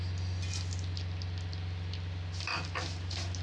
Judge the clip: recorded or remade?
recorded